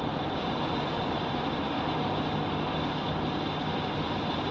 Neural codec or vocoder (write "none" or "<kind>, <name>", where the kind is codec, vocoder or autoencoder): none